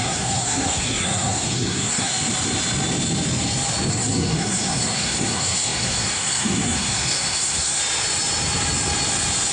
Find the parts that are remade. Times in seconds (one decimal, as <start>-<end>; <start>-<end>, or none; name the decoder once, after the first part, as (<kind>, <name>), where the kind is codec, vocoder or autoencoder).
0.0-2.1 (codec, SNAC); 3.9-7.8